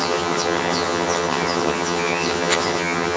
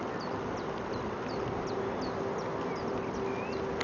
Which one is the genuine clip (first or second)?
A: second